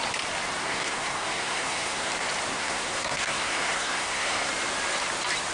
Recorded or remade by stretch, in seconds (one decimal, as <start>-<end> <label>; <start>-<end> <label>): 0.0-0.6 recorded; 0.6-2.1 remade; 2.1-2.5 recorded; 2.5-4.5 remade; 4.5-5.5 recorded